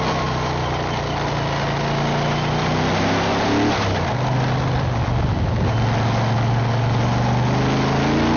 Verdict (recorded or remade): recorded